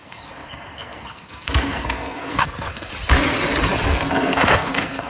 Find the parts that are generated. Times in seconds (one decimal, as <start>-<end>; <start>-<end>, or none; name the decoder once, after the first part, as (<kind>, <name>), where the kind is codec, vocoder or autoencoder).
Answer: 0.0-2.9 (codec, SNAC); 3.9-5.1